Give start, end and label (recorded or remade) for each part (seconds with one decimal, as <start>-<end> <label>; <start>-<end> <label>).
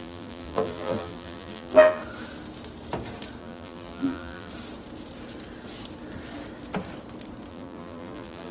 0.0-2.0 remade; 2.0-3.4 recorded; 3.4-4.5 remade; 4.5-7.5 recorded; 7.5-8.5 remade